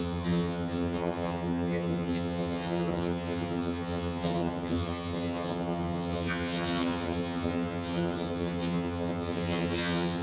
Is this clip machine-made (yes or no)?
yes